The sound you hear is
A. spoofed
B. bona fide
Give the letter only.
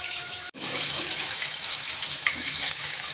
A